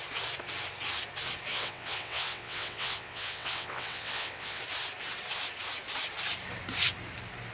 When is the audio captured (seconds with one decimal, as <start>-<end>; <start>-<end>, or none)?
0.0-1.5; 4.6-7.5